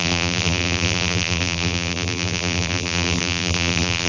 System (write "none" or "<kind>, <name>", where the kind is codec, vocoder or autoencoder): vocoder, BigVGAN v2